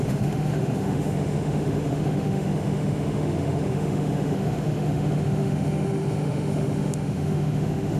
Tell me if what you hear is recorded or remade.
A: remade